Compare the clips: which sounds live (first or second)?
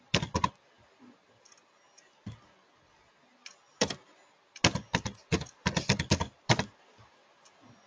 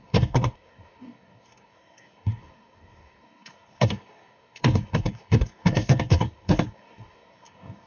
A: first